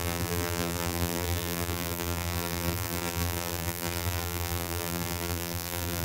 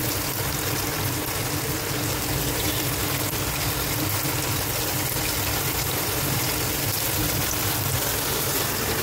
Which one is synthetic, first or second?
first